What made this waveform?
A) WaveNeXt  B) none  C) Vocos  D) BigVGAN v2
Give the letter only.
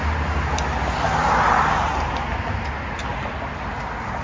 B